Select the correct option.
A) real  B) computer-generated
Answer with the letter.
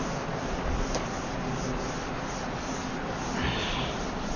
A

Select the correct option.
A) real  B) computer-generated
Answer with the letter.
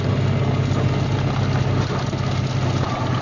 A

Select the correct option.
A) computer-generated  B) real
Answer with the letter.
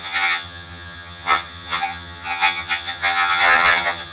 A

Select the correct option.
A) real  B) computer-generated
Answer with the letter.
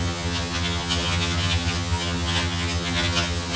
B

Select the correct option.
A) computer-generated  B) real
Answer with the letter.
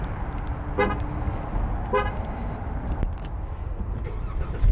B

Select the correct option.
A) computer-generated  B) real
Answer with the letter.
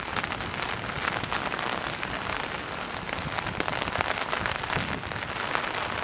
B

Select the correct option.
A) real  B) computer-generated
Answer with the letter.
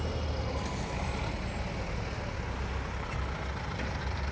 A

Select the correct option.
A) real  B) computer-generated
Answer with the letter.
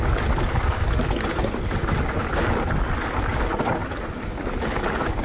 A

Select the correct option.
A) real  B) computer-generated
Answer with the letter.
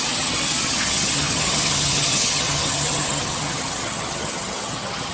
B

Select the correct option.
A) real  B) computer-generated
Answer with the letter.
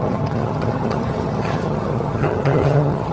B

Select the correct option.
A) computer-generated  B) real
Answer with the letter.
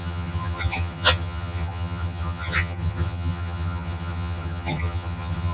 A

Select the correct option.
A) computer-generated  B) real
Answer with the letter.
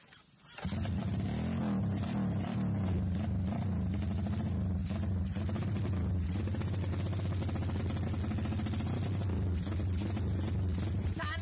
B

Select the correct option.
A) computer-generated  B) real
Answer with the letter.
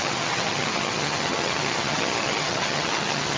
A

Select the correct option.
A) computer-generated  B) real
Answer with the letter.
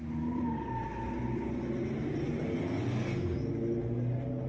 B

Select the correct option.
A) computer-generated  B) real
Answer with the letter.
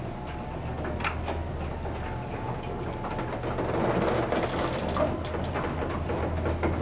B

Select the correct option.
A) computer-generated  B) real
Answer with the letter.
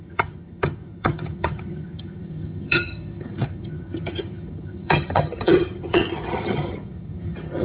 A